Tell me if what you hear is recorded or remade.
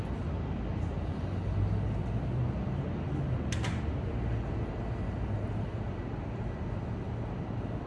recorded